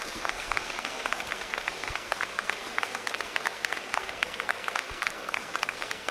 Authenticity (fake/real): fake